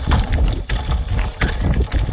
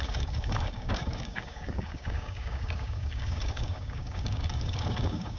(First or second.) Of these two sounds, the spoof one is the second